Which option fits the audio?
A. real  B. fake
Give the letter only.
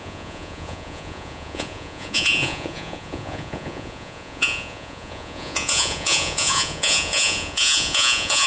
B